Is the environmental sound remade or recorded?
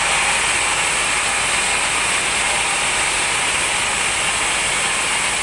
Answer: recorded